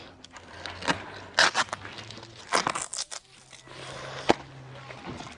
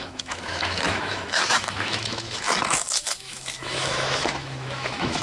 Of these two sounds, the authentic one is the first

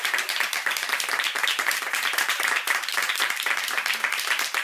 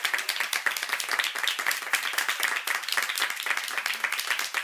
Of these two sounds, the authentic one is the second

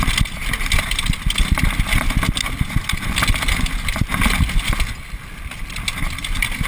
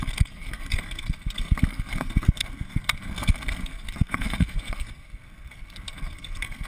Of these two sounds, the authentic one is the first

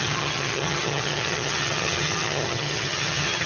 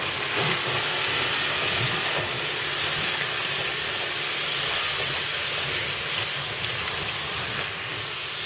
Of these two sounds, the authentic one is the second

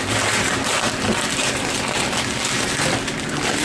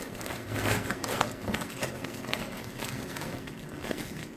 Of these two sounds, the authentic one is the first